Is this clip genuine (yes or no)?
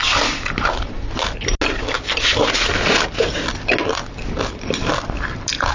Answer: yes